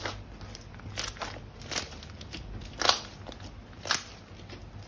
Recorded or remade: recorded